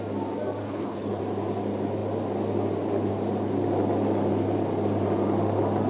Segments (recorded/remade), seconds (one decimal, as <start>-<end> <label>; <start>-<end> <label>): 0.0-0.6 recorded; 0.6-1.2 remade; 1.2-5.9 recorded